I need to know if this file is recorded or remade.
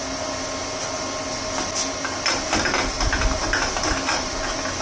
recorded